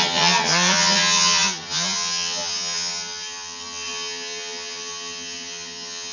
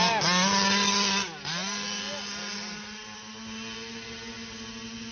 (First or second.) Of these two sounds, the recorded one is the second